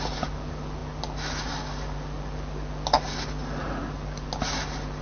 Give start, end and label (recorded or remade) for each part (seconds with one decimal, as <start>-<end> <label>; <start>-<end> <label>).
0.0-5.0 recorded

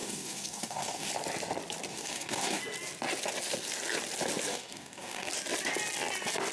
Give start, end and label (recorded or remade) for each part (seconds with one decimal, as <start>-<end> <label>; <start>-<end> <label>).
0.0-1.1 remade; 1.1-1.9 recorded; 1.9-2.6 remade; 2.6-4.5 recorded; 4.5-5.3 remade; 5.3-6.5 recorded

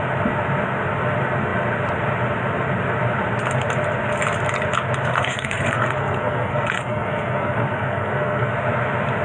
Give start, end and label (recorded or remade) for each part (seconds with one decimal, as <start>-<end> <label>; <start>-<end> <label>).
0.0-5.1 recorded; 5.1-8.5 remade; 8.5-9.2 recorded

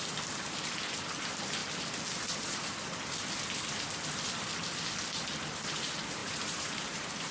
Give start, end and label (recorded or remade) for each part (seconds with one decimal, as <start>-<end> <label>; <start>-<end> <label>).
0.0-6.2 recorded; 6.2-7.3 remade

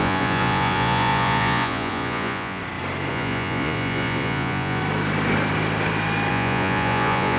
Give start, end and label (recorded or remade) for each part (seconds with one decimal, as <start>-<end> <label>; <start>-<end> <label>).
0.0-2.6 remade; 2.6-3.1 recorded; 3.1-4.8 remade; 4.8-6.3 recorded; 6.3-7.4 remade

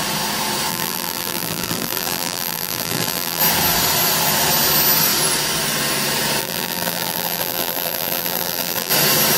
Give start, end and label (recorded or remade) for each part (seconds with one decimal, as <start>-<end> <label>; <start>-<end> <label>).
0.0-0.7 recorded; 0.7-3.4 remade; 3.4-6.4 recorded; 6.4-8.9 remade; 8.9-9.4 recorded

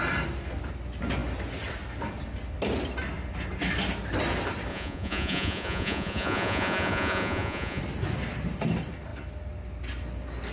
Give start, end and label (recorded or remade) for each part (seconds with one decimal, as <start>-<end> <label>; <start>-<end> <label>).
0.0-4.7 recorded; 4.7-7.8 remade; 7.8-10.5 recorded